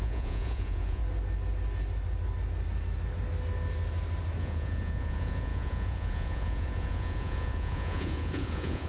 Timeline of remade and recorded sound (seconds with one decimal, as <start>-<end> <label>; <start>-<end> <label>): 0.0-1.0 remade; 1.0-4.4 recorded; 4.4-8.9 remade